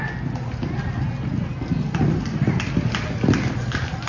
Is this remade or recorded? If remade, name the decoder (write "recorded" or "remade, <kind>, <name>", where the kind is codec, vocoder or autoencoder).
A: recorded